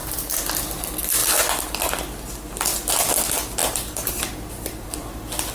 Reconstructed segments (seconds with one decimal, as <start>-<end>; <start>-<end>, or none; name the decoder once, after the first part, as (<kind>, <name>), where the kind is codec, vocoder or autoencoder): 0.0-0.6 (vocoder, BigVGAN v2); 3.6-5.1